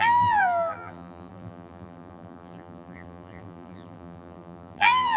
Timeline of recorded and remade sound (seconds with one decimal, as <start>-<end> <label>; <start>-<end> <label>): 0.0-5.2 remade